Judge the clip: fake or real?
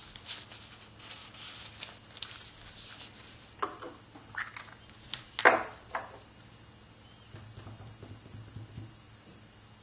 real